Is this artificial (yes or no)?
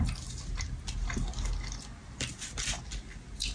no